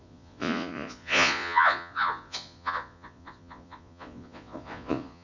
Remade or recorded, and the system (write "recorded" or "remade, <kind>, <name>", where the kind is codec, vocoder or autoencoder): remade, vocoder, Vocos